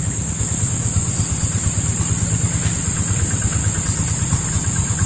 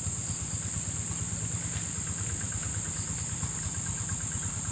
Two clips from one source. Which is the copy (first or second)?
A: first